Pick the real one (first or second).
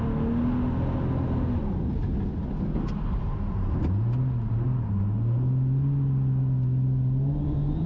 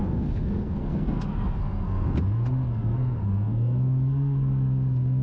first